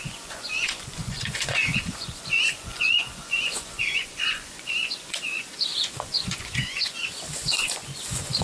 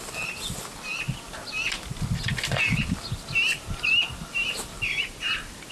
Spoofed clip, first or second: first